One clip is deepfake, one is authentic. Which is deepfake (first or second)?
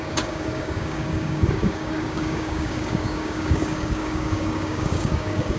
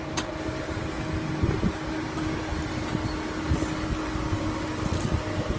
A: first